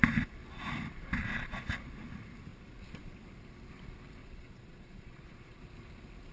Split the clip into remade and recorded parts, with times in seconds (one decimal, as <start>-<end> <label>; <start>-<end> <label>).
0.0-1.2 recorded; 1.2-1.7 remade; 1.7-4.2 recorded; 4.2-5.6 remade; 5.6-6.3 recorded